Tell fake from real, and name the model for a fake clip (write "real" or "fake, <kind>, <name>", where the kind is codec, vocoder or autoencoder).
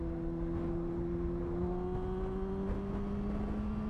real